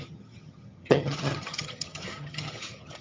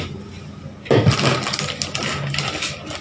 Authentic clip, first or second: second